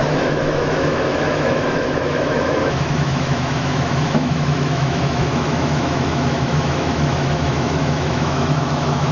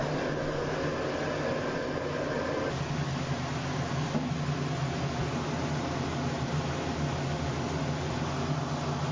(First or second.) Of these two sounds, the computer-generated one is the first